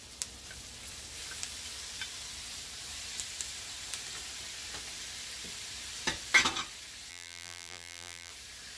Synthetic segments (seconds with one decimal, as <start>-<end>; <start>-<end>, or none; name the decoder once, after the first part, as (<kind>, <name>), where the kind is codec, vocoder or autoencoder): 7.1-8.3 (vocoder, BigVGAN v2)